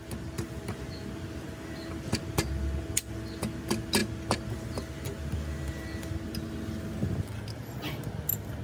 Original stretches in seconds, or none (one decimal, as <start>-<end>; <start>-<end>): 0.0-8.6

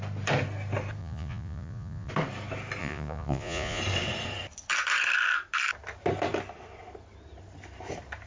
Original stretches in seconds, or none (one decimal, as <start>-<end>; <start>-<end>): 0.0-1.0; 2.1-2.8; 3.8-8.3

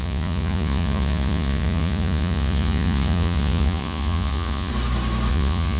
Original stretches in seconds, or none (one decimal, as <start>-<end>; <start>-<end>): 4.7-5.3

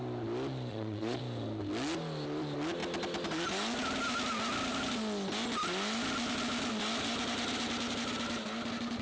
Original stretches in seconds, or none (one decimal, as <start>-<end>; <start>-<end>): 0.0-0.7; 1.2-9.0

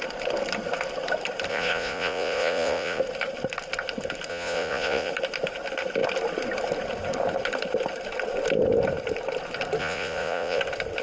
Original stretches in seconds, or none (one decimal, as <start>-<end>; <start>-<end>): 0.0-1.5; 3.0-4.3; 5.1-9.8; 10.6-11.0